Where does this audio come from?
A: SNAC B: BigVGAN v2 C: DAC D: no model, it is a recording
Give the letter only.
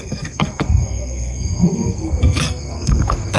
A